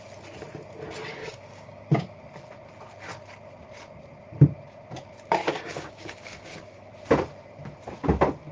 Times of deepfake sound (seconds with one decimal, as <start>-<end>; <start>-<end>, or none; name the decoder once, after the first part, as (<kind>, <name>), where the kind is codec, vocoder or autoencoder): 1.2-2.2 (codec, DAC); 5.4-6.9